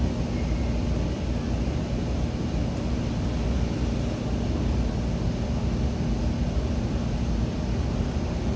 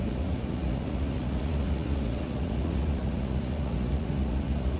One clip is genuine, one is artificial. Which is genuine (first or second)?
first